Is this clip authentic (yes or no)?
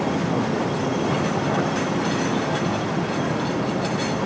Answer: yes